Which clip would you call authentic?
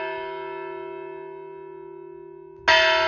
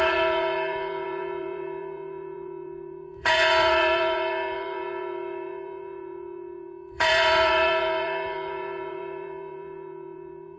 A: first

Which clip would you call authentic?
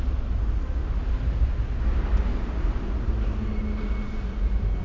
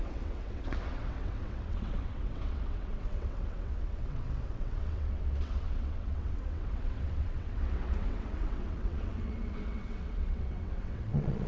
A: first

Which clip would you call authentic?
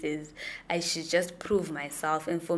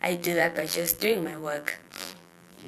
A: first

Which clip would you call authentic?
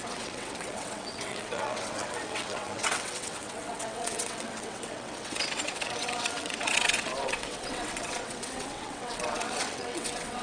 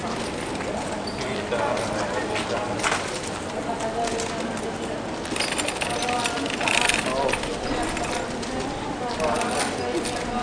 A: second